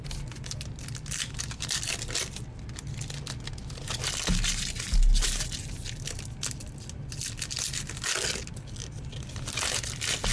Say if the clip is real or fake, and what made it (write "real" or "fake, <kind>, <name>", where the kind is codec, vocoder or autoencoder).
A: real